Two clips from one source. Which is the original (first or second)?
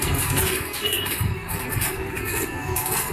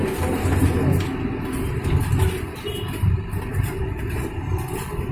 second